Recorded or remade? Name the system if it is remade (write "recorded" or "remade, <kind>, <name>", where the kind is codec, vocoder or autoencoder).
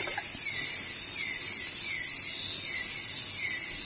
recorded